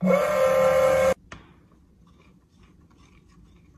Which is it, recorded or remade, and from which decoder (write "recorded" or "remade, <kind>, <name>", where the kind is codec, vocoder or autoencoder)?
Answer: recorded